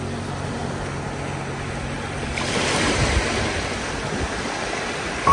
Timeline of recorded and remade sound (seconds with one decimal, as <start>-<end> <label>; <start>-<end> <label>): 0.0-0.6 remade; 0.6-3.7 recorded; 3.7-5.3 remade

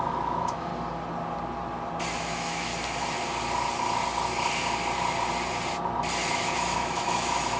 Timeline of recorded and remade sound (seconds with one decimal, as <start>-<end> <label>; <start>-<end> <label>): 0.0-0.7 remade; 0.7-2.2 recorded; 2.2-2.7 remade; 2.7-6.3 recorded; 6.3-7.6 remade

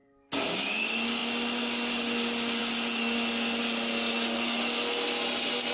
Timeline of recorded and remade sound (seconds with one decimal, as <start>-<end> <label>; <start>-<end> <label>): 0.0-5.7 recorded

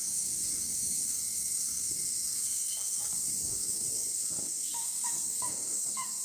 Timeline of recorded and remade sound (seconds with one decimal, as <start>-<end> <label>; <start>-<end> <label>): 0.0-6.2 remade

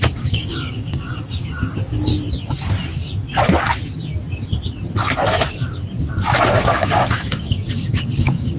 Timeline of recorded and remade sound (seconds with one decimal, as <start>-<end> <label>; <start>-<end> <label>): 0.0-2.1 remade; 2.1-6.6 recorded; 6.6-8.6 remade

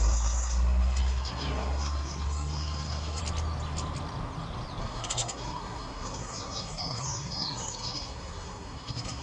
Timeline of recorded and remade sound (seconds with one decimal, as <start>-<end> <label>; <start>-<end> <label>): 0.0-3.2 remade; 3.2-4.8 recorded; 4.8-9.2 remade

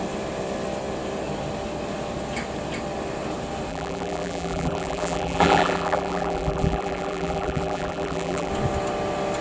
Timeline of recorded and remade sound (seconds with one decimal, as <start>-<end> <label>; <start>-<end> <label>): 0.0-3.7 recorded; 3.7-8.5 remade; 8.5-9.4 recorded